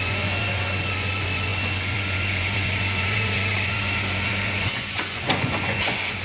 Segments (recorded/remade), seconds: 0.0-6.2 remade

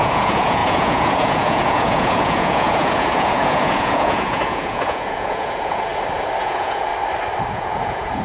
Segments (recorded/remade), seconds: 0.0-5.9 remade; 5.9-6.4 recorded; 6.4-6.9 remade; 6.9-7.4 recorded; 7.4-8.2 remade

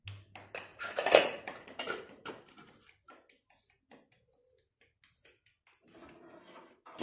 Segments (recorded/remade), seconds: 0.0-0.7 recorded; 0.7-2.3 remade; 2.3-7.0 recorded